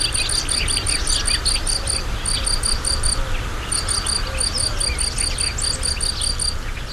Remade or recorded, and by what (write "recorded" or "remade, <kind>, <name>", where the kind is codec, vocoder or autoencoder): recorded